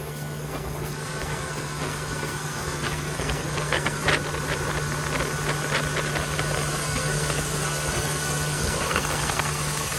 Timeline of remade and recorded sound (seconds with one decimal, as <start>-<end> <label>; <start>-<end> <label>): 0.0-4.1 remade; 4.1-6.7 recorded; 6.7-10.0 remade